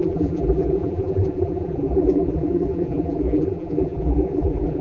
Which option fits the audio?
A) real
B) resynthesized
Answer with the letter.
B